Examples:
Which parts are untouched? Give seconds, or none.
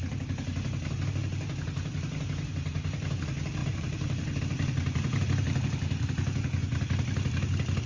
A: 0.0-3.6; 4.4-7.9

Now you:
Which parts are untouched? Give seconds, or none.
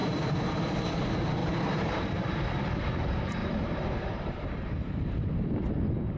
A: 1.0-1.4; 2.2-3.4; 5.3-6.2